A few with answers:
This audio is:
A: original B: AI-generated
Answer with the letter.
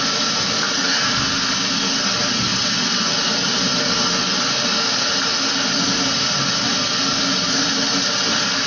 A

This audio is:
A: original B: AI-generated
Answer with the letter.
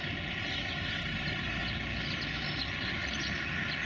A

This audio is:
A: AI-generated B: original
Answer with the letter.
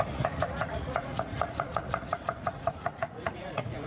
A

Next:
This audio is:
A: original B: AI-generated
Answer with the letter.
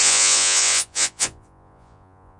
B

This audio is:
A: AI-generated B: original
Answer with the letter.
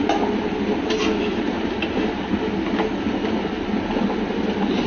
B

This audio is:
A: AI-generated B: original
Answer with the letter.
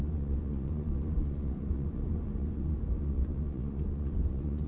A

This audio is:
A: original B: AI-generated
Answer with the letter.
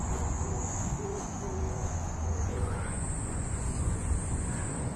B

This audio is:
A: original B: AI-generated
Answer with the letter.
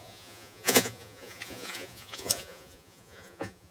B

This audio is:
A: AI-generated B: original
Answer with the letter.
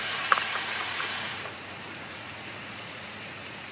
A